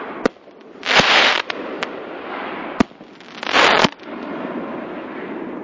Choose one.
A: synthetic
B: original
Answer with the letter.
B